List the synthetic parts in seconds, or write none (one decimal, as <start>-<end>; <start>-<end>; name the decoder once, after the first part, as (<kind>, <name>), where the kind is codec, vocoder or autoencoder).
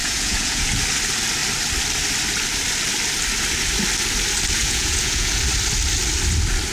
0.0-0.7 (vocoder, Vocos); 4.6-5.4